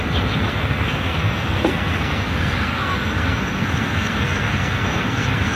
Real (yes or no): no